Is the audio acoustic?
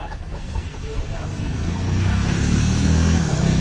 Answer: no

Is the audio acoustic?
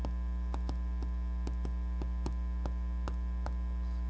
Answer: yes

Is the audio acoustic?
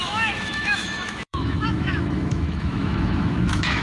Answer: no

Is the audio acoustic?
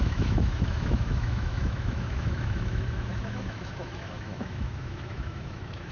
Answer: no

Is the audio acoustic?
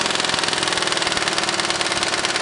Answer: yes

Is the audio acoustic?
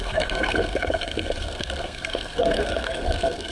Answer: no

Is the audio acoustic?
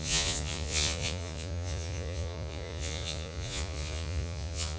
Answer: no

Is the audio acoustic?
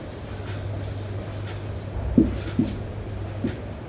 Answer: yes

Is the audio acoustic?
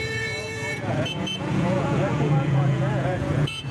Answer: no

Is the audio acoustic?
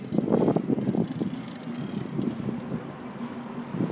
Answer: yes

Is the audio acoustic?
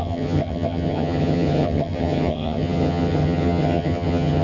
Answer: no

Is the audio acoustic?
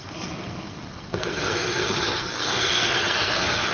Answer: no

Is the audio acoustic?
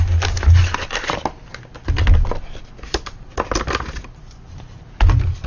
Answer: yes